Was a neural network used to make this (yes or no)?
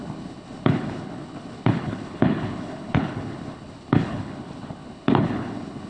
yes